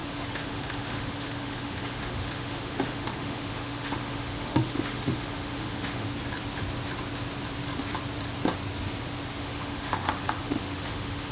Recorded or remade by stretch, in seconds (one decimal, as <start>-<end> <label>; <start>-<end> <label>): 0.0-6.1 remade; 6.1-9.4 recorded; 9.4-11.3 remade